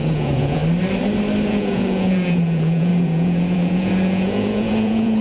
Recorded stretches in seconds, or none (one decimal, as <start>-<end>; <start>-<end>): 0.6-1.5